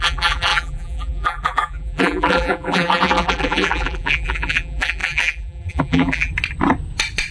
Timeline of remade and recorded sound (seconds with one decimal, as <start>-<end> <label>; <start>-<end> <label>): 0.0-6.3 remade; 6.3-7.3 recorded